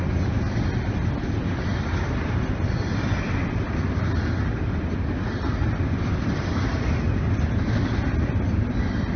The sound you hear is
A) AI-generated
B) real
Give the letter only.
B